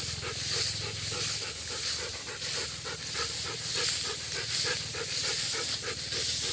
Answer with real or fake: real